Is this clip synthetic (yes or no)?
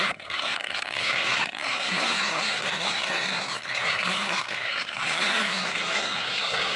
yes